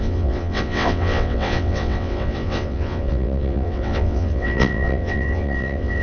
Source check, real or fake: fake